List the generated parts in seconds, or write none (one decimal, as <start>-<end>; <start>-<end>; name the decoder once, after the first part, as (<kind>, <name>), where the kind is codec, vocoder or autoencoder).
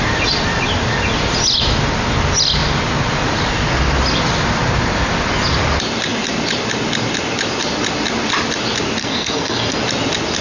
9.0-9.8 (codec, SNAC)